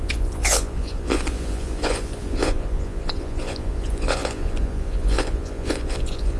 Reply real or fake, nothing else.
fake